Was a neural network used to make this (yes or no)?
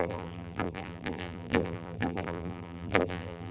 yes